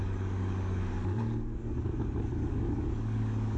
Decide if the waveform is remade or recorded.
remade